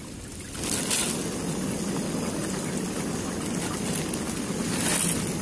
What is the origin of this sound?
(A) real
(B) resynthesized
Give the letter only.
A